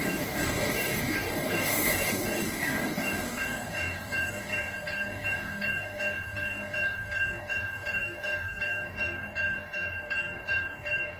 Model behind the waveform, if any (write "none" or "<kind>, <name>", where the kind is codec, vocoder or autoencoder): codec, DAC